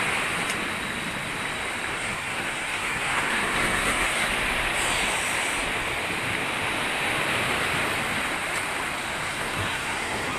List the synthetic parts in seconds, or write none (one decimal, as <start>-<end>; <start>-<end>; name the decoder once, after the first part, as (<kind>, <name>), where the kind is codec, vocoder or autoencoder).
1.9-4.3 (codec, SNAC); 9.3-10.4